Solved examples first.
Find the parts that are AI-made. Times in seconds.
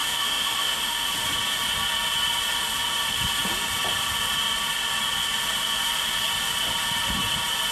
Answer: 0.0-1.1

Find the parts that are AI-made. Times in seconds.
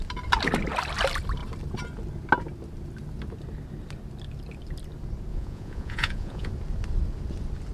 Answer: 5.3-6.5